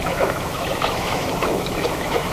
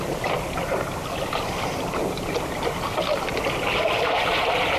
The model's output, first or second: first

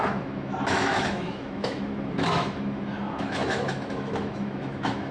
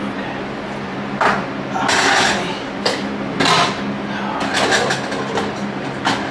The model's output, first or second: first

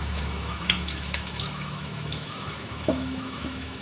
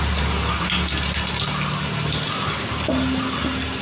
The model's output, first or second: first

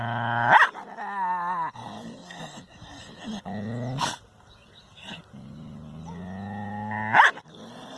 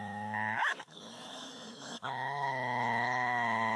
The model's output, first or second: second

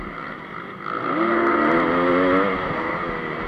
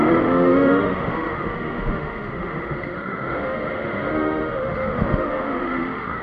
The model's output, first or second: second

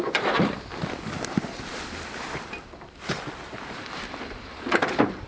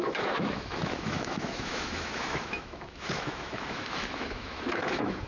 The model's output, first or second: second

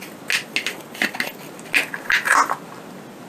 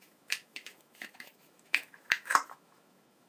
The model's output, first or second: second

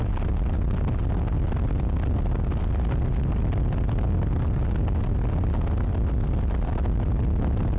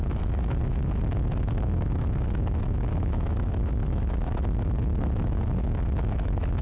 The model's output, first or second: second